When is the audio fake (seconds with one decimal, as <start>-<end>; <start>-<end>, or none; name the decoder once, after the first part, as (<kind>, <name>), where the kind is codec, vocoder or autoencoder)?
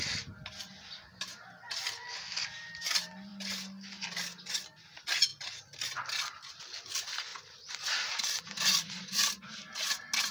none